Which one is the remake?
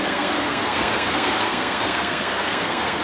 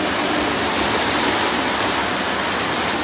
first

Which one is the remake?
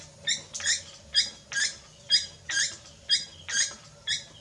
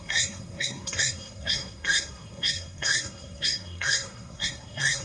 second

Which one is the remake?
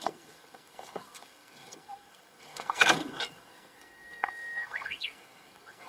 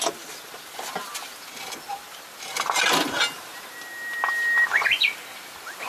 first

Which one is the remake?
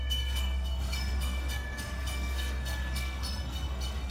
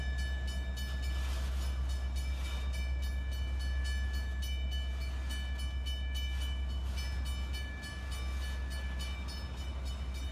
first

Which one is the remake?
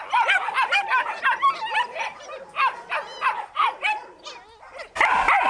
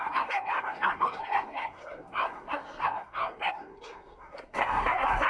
second